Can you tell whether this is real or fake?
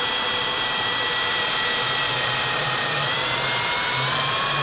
fake